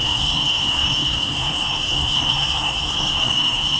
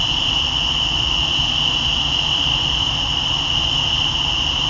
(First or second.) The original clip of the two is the second